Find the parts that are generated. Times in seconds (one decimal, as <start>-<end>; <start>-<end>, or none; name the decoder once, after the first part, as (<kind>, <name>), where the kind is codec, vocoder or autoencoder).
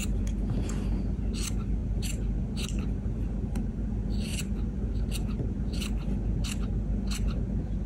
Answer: none